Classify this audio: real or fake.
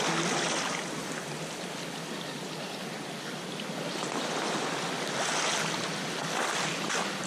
real